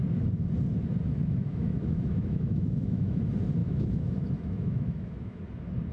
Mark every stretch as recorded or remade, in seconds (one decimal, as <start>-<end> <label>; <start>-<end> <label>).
0.0-1.2 recorded; 1.2-3.2 remade; 3.2-3.6 recorded; 3.6-5.4 remade; 5.4-5.9 recorded